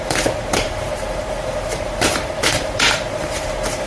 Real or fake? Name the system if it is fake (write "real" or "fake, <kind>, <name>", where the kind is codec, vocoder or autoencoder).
fake, vocoder, BigVGAN v2